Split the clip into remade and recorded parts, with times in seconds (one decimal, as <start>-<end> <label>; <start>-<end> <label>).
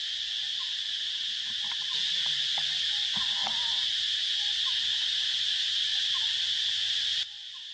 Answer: 0.0-3.4 remade; 3.4-5.4 recorded; 5.4-5.9 remade; 5.9-6.9 recorded; 6.9-7.7 remade